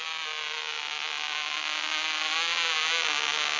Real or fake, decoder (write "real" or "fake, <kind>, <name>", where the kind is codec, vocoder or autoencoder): real